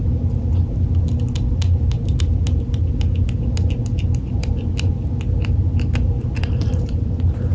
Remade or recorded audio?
recorded